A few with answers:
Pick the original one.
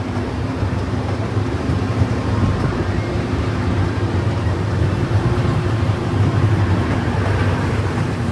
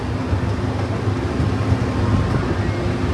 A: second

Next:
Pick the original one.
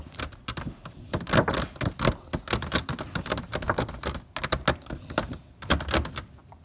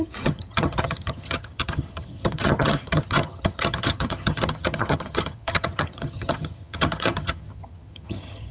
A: first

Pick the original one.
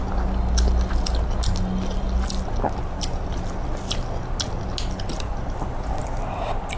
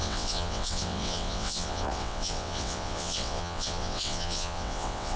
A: first